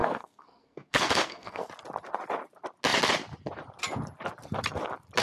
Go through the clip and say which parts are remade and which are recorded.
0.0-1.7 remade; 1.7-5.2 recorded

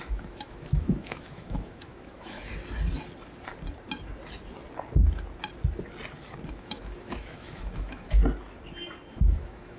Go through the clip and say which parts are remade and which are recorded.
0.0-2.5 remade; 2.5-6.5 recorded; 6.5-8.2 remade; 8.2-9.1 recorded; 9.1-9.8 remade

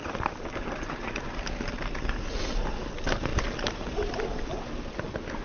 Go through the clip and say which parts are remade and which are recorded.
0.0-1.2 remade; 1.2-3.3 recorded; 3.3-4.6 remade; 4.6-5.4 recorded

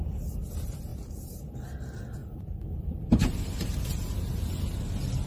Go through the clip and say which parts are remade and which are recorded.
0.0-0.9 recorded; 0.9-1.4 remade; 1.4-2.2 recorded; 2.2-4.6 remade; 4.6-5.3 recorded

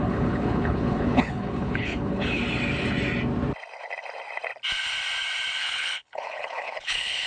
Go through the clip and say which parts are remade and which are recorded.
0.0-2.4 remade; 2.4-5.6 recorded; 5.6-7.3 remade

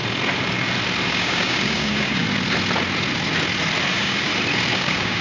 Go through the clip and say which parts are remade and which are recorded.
0.0-1.1 recorded; 1.1-2.2 remade; 2.2-3.9 recorded; 3.9-4.3 remade; 4.3-4.8 recorded; 4.8-5.2 remade